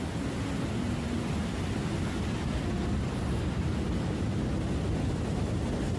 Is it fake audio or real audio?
real